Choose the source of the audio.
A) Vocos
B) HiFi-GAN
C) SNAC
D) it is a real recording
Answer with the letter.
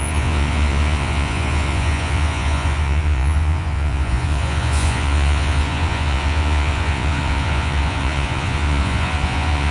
A